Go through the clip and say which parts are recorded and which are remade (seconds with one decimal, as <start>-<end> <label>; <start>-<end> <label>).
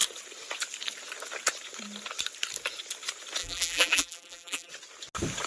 0.0-3.4 recorded; 3.4-4.7 remade; 4.7-5.5 recorded